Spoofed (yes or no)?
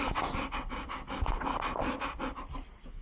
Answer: no